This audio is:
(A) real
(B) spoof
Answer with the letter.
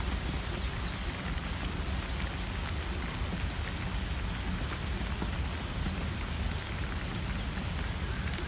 A